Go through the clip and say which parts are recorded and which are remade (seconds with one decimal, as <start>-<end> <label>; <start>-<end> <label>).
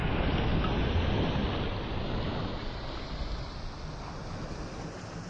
0.0-5.3 recorded